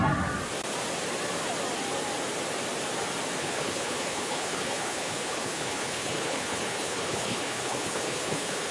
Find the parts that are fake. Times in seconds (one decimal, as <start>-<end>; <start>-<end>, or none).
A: 3.4-8.7